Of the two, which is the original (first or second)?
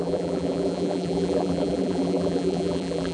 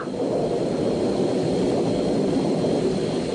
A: second